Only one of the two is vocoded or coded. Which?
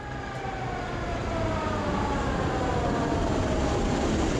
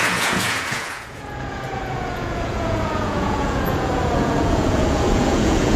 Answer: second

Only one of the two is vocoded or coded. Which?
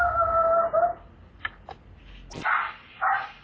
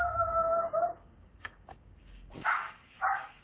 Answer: second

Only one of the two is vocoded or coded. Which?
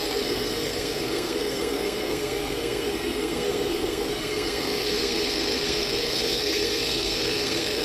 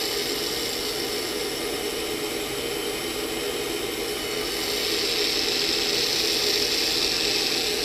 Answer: first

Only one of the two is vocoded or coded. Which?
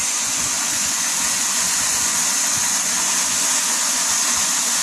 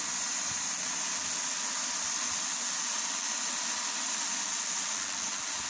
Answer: first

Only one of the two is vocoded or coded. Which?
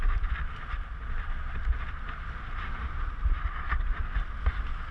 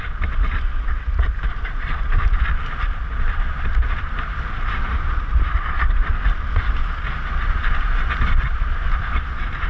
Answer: second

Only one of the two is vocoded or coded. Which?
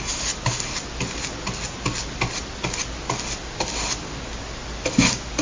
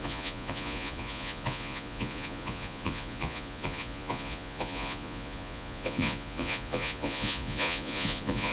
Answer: second